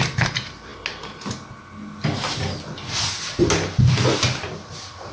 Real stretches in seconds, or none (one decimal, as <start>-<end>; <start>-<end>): 0.0-5.1

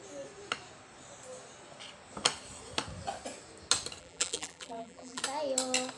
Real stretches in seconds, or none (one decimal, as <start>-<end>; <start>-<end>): 0.0-4.0; 5.2-6.0

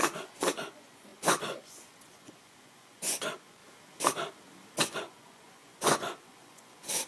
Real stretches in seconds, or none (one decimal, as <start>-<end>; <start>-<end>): 3.6-4.8

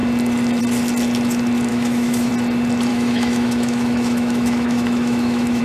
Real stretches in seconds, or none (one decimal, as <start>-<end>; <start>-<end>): 0.0-1.7; 2.3-2.9

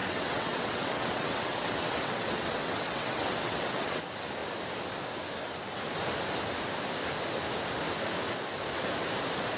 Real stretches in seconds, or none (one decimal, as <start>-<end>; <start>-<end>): 4.0-9.6

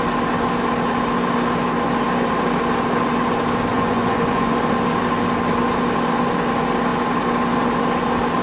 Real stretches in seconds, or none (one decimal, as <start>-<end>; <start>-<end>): 0.0-3.7; 4.5-8.4

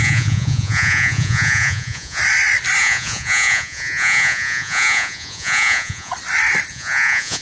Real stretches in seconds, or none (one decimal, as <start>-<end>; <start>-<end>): 2.2-2.8; 6.1-6.7

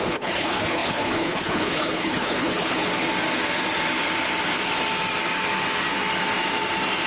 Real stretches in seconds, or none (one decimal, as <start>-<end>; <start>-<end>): 2.9-7.1